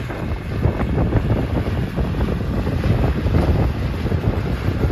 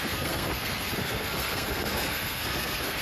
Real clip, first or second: first